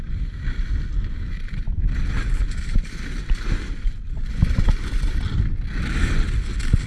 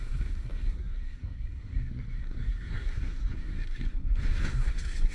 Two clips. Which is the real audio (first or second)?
first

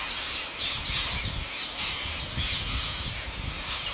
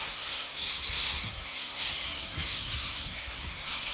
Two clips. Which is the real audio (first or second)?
first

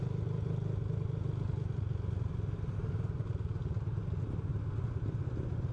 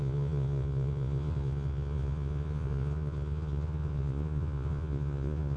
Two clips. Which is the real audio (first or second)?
first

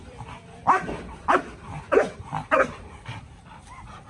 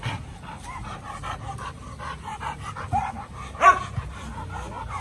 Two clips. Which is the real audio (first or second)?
second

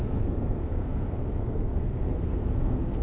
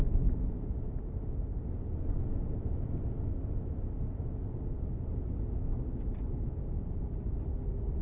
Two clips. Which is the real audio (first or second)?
second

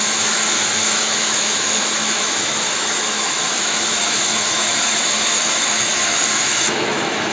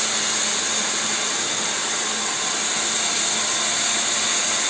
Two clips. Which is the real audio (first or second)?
second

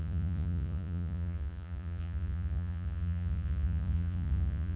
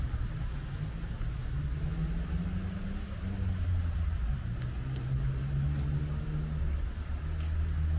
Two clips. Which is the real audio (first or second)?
second